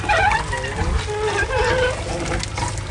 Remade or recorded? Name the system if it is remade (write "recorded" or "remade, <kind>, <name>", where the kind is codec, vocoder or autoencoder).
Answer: recorded